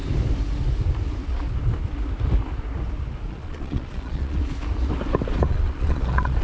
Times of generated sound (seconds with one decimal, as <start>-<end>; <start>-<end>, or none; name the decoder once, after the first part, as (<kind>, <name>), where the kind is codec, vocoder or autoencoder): 3.3-4.4 (vocoder, Vocos); 5.5-6.4